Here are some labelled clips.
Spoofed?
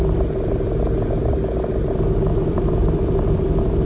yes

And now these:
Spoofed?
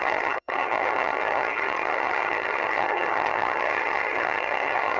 yes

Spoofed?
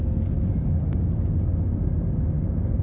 no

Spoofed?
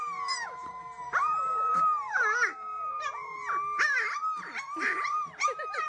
yes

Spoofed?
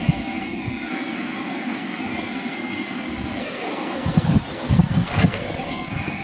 yes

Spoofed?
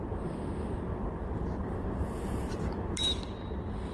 yes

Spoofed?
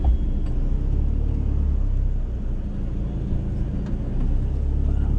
no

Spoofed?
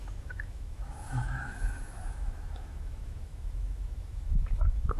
yes